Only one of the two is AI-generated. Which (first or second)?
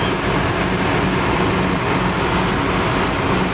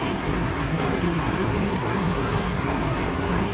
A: second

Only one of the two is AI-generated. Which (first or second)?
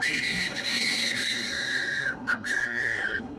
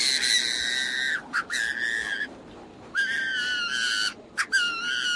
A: first